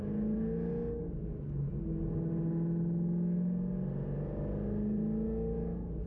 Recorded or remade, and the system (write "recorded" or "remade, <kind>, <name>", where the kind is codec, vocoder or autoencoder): recorded